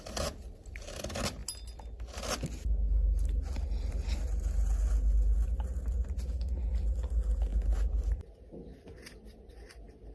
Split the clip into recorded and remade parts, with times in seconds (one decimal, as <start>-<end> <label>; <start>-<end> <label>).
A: 0.0-10.1 recorded